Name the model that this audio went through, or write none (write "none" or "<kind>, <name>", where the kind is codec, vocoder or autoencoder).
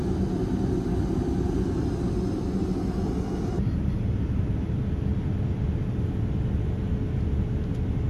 none